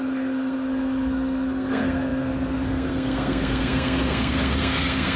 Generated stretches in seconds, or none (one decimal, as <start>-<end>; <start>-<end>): 0.0-5.2